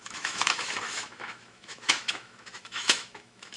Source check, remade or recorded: remade